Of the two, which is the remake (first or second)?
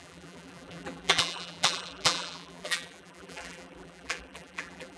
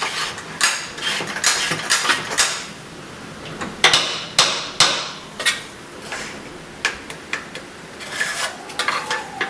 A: first